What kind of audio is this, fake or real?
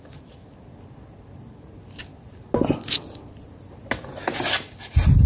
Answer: real